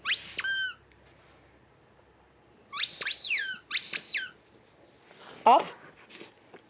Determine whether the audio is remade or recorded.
recorded